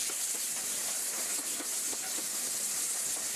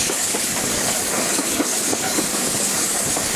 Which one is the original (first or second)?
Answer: first